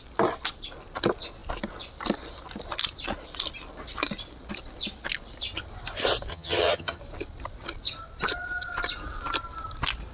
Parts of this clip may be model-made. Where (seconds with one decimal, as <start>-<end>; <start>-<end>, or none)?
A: 6.3-7.0